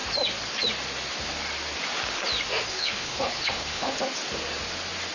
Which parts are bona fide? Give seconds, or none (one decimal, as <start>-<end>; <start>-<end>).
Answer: 0.0-2.7; 4.0-5.1